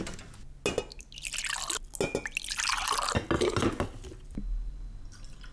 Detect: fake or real real